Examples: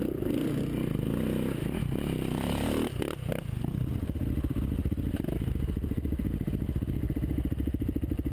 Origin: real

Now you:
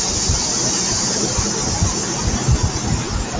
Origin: real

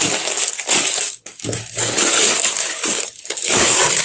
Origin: fake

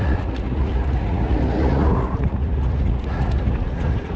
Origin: fake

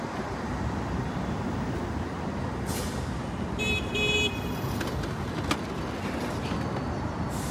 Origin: real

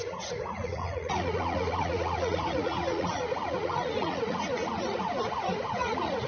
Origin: fake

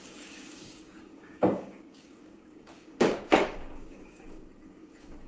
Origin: fake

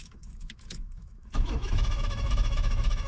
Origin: fake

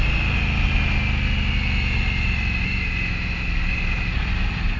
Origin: real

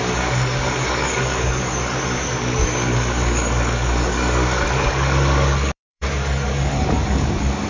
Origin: fake